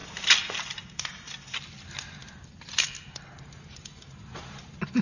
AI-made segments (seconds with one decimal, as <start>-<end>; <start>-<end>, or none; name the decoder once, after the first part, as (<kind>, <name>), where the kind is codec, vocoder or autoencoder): 3.0-5.0 (vocoder, BigVGAN v2)